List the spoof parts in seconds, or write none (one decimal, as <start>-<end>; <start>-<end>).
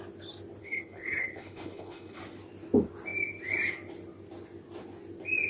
0.6-2.2